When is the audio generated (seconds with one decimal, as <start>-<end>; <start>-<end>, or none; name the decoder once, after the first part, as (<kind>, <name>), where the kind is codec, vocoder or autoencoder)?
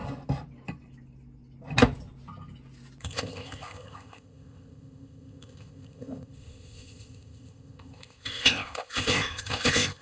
3.0-10.0 (codec, ZipCodec)